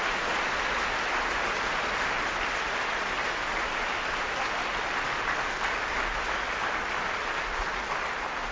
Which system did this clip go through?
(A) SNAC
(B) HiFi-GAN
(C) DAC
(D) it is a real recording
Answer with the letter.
D